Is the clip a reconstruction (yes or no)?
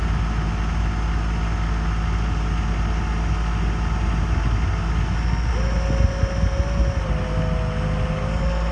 no